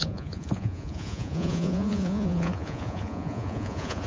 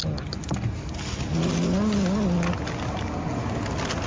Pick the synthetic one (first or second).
first